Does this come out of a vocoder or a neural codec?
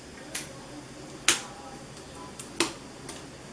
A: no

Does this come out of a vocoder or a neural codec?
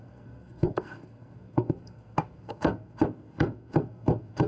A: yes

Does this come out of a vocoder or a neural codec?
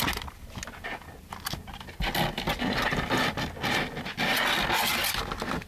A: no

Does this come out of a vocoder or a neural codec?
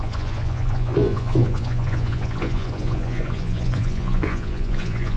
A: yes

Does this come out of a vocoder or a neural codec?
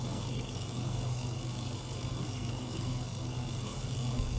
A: yes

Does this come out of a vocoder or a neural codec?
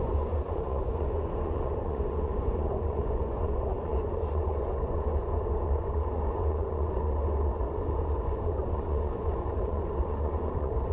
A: yes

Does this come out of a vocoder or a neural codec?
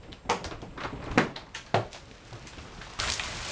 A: no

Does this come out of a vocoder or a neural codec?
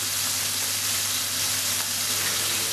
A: no